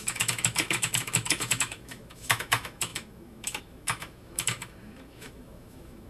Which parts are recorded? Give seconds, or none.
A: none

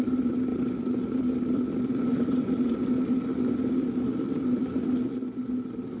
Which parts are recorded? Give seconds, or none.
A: 0.0-0.5; 1.2-2.1; 2.7-6.0

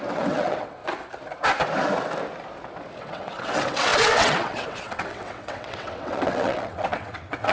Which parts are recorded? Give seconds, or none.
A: 0.8-3.0

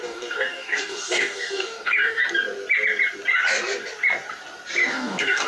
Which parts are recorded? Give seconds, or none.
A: 2.2-4.9